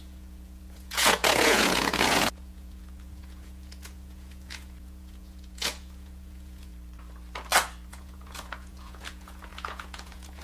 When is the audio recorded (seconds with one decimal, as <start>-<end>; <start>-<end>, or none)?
6.7-7.9